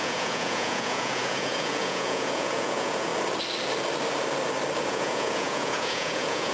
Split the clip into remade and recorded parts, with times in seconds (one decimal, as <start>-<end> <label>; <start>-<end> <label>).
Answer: 0.0-3.1 remade; 3.1-4.8 recorded; 4.8-6.5 remade